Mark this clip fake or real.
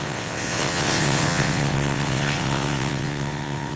fake